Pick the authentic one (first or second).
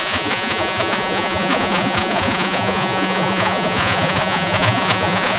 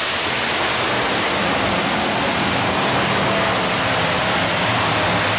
second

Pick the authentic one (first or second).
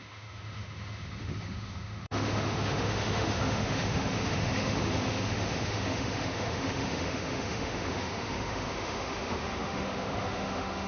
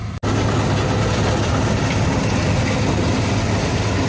second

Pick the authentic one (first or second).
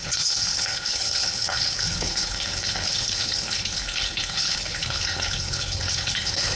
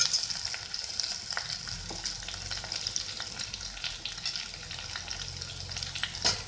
second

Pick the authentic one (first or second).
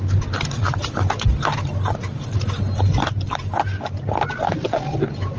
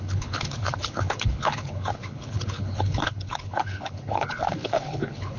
first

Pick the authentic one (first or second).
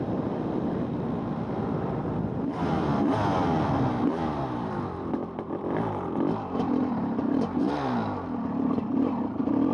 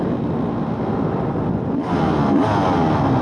second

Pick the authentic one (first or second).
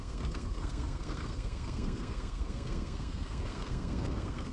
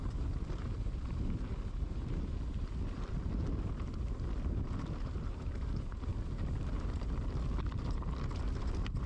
second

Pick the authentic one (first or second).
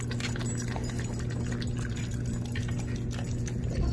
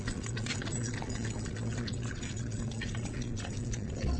first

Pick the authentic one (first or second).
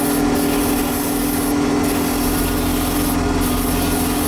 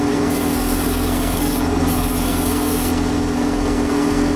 first